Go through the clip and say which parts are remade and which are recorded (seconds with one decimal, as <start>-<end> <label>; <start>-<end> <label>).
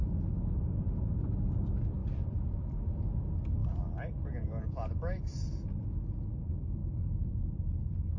0.0-2.0 recorded; 2.0-2.6 remade; 2.6-3.6 recorded; 3.6-5.2 remade; 5.2-8.2 recorded